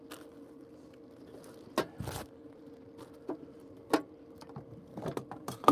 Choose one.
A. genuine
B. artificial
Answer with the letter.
A